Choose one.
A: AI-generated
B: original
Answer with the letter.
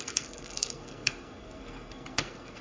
A